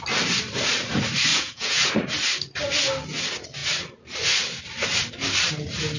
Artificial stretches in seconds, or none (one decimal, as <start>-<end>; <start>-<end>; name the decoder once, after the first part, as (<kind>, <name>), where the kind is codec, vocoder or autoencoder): 1.3-1.9 (vocoder, Vocos)